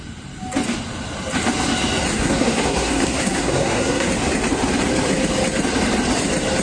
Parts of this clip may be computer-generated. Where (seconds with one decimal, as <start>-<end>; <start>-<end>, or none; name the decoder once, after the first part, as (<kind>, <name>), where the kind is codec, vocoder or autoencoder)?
2.1-4.1 (codec, SNAC)